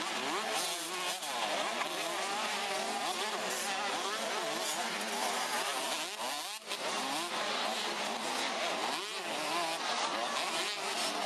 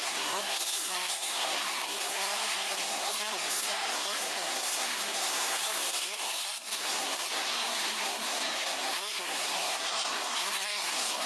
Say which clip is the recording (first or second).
first